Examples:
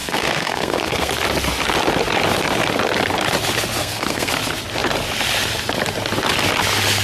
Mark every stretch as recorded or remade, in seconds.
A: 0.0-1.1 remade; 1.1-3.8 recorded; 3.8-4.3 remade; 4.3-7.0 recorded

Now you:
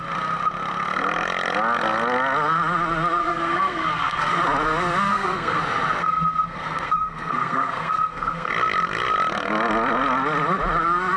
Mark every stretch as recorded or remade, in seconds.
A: 0.0-3.2 recorded; 3.2-4.4 remade; 4.4-5.1 recorded; 5.1-5.6 remade; 5.6-6.0 recorded; 6.0-8.5 remade; 8.5-11.2 recorded

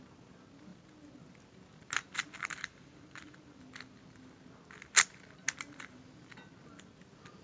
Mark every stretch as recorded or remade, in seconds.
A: 0.0-7.4 recorded

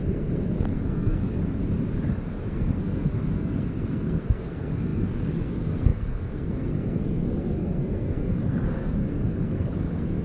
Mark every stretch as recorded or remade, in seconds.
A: 0.0-1.6 remade; 1.6-2.4 recorded; 2.4-10.2 remade

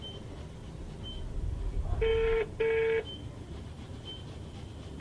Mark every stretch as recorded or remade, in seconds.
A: 0.0-2.1 recorded; 2.1-2.6 remade; 2.6-5.0 recorded

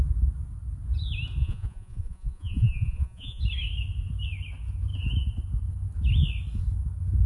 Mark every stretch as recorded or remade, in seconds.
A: 0.0-1.4 recorded; 1.4-3.4 remade; 3.4-7.3 recorded

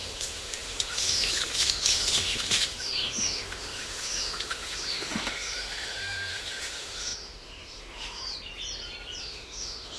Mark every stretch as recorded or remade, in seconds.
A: 0.0-8.2 remade; 8.2-9.2 recorded; 9.2-10.0 remade